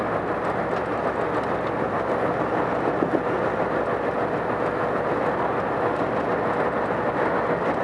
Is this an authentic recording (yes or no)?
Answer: yes